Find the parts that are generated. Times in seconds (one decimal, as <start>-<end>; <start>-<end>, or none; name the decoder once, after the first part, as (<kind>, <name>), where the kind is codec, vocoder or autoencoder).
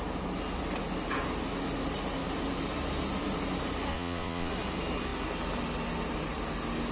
3.9-4.5 (vocoder, Vocos)